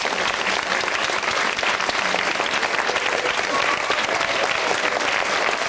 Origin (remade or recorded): remade